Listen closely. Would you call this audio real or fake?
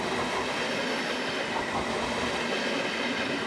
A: real